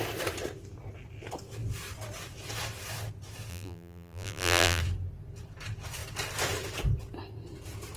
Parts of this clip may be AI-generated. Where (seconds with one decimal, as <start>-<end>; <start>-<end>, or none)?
3.5-4.8